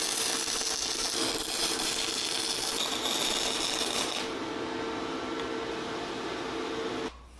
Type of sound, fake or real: real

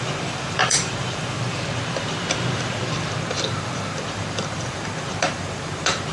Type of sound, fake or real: fake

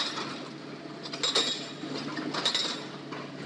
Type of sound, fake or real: real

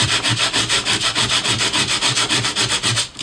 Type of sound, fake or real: fake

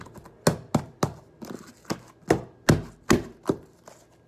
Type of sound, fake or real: real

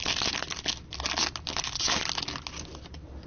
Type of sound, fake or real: real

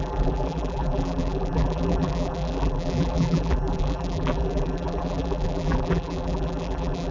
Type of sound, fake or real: fake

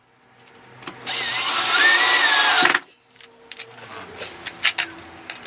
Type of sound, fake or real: real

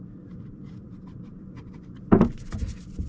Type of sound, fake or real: fake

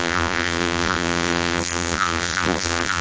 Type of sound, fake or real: fake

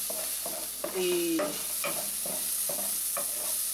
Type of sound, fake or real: real